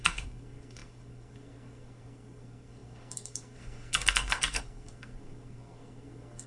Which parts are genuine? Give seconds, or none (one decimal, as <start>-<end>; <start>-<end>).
none